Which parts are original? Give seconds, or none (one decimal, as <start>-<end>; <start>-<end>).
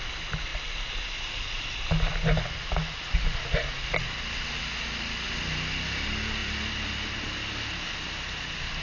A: 0.0-8.8